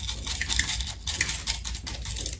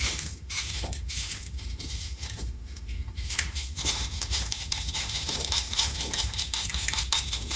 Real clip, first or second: first